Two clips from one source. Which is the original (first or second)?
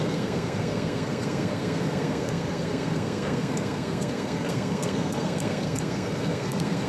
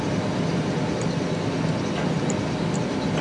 second